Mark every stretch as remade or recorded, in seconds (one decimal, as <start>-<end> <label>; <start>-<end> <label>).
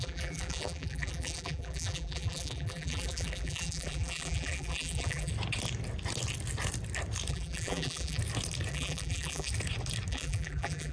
0.0-5.3 remade; 5.3-7.3 recorded; 7.3-8.2 remade; 8.2-8.7 recorded; 8.7-9.5 remade; 9.5-10.1 recorded; 10.1-10.9 remade